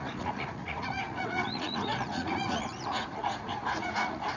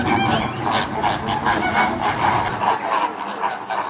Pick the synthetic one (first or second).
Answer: first